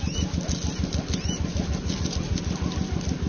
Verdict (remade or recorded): remade